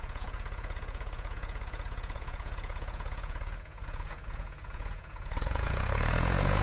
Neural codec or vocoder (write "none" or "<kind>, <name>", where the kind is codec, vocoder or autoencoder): vocoder, Vocos